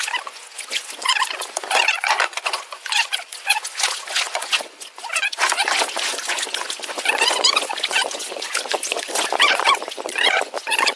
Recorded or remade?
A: remade